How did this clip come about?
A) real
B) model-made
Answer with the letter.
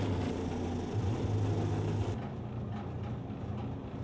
A